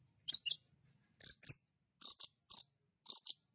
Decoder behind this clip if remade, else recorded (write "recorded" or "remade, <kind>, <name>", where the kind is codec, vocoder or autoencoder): recorded